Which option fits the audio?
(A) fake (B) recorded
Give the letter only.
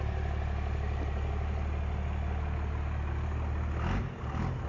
B